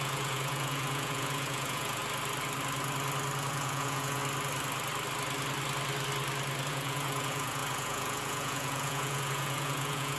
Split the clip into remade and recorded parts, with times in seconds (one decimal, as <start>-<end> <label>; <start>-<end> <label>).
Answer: 0.0-2.0 remade; 2.0-3.5 recorded; 3.5-4.2 remade; 4.2-6.7 recorded; 6.7-10.2 remade